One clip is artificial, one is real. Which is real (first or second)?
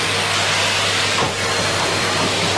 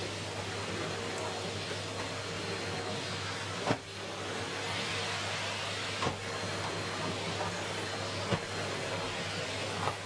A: second